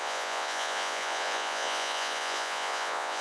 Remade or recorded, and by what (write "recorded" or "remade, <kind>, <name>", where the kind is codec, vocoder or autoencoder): remade, vocoder, Vocos